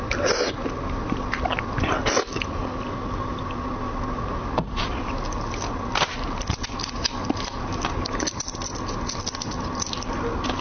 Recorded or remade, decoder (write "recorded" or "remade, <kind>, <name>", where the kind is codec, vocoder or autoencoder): recorded